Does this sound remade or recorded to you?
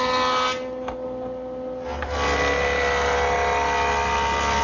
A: recorded